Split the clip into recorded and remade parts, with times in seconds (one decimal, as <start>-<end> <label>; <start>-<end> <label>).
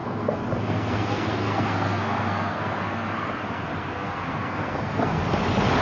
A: 0.0-5.2 remade; 5.2-5.8 recorded